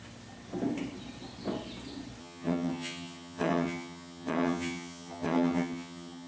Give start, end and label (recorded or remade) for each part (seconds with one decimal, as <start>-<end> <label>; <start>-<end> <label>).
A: 0.0-2.2 recorded; 2.2-6.3 remade